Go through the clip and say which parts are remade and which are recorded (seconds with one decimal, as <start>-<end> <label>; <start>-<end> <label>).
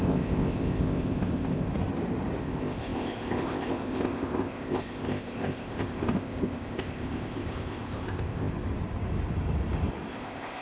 0.0-1.7 remade; 1.7-2.4 recorded; 2.4-8.5 remade; 8.5-10.1 recorded; 10.1-10.6 remade